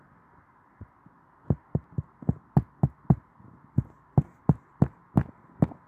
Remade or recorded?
recorded